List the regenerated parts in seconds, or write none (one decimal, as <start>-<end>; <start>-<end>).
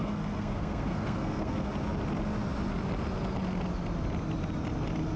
0.0-1.7